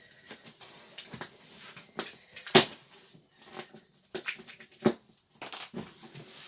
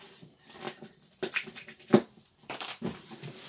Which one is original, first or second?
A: first